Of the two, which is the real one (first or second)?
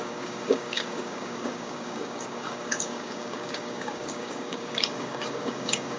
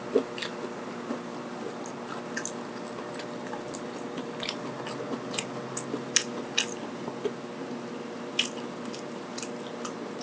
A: second